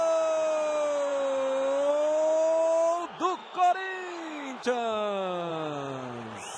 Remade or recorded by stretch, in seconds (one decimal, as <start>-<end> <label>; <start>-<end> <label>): 0.0-3.4 recorded; 3.4-5.5 remade; 5.5-6.6 recorded